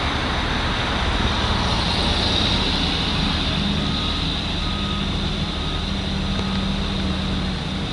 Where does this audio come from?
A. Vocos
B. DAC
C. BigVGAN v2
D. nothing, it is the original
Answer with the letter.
D